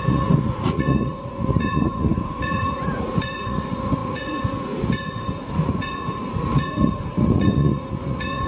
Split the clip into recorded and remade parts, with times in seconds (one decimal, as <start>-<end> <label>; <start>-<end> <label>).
0.0-8.5 remade